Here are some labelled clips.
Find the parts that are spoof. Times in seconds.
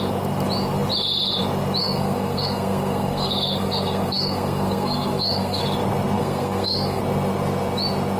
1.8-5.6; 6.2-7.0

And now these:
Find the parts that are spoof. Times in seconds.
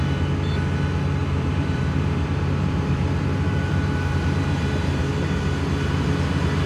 1.2-5.1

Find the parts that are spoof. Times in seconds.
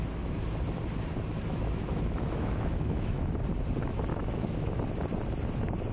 1.5-3.3; 4.1-4.6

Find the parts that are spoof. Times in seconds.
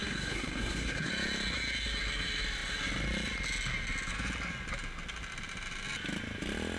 0.0-1.1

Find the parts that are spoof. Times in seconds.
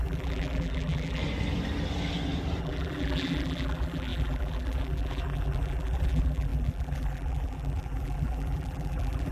0.0-1.2; 2.6-9.3